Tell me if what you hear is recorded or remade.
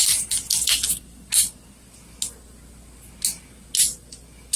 recorded